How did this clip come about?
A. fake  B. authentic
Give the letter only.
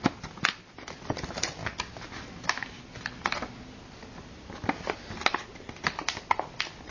B